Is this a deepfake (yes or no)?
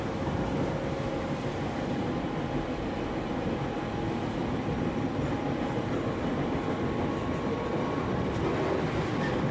no